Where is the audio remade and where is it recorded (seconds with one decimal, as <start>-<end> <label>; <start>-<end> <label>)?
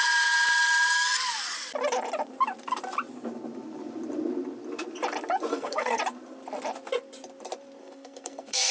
0.0-5.5 recorded; 5.5-6.0 remade; 6.0-7.8 recorded; 7.8-8.7 remade